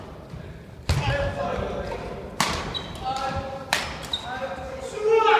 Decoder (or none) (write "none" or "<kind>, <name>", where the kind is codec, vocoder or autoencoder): none